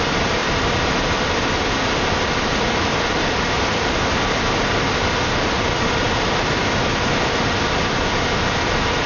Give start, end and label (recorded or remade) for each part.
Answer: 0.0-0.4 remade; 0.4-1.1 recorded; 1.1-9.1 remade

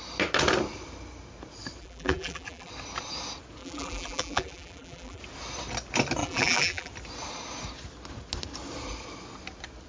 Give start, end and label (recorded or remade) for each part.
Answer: 0.0-1.8 recorded; 1.8-2.7 remade; 2.7-3.6 recorded; 3.6-5.2 remade; 5.2-6.2 recorded; 6.2-6.9 remade; 6.9-9.9 recorded

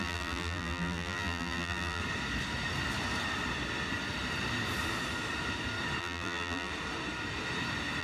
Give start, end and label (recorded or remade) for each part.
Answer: 0.0-2.0 remade; 2.0-6.0 recorded; 6.0-6.7 remade; 6.7-8.0 recorded

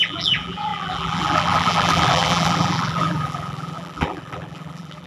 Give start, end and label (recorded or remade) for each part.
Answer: 0.0-5.1 remade